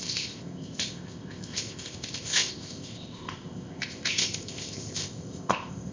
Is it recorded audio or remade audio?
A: remade